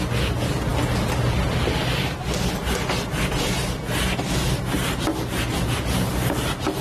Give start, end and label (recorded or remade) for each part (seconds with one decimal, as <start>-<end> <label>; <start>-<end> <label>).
0.0-6.8 recorded